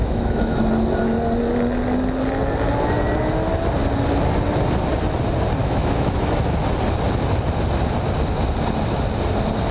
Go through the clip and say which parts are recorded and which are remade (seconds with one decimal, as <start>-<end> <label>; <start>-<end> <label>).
0.0-0.6 remade; 0.6-5.6 recorded; 5.6-6.4 remade; 6.4-9.7 recorded